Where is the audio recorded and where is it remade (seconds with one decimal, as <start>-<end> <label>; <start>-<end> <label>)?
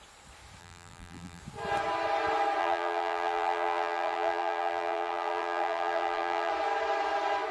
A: 0.0-0.6 recorded; 0.6-1.4 remade; 1.4-2.6 recorded; 2.6-6.5 remade; 6.5-7.5 recorded